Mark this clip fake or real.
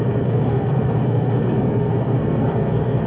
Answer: fake